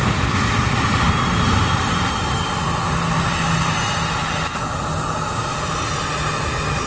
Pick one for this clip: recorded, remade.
recorded